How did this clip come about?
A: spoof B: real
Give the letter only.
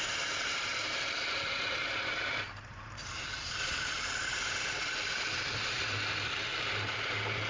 A